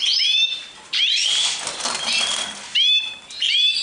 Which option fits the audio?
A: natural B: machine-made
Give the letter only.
A